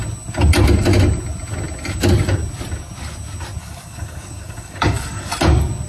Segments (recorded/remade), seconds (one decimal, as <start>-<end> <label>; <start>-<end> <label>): 0.0-3.6 recorded; 3.6-5.3 remade; 5.3-5.9 recorded